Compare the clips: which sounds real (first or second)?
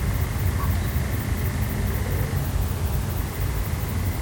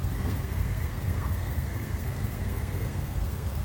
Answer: first